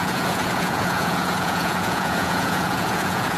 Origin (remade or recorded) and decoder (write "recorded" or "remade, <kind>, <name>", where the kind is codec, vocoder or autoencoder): remade, vocoder, Vocos